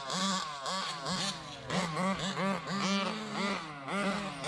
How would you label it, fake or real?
real